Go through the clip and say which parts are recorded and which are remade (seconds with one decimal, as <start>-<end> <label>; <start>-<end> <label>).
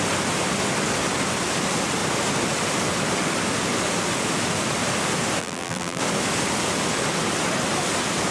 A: 0.0-5.4 recorded; 5.4-6.0 remade; 6.0-8.3 recorded